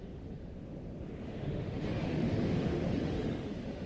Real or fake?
fake